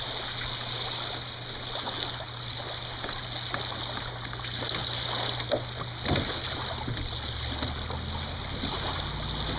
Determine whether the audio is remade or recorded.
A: recorded